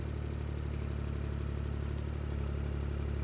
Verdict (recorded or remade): recorded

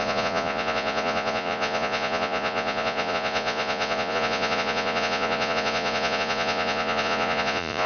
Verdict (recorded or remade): remade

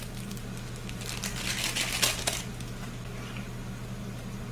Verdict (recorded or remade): recorded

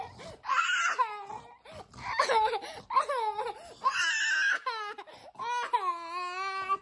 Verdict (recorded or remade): recorded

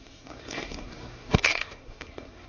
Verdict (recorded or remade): remade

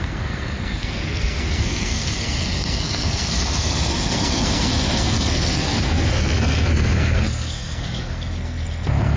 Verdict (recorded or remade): remade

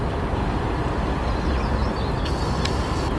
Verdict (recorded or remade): recorded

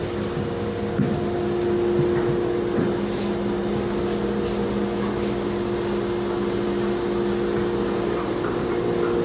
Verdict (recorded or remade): recorded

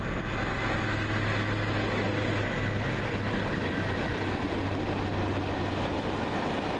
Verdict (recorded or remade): recorded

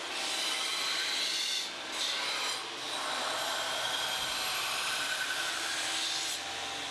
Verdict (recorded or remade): recorded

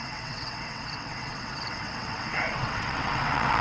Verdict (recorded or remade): remade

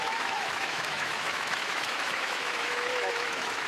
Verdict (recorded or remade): remade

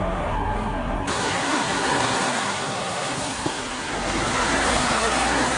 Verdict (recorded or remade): remade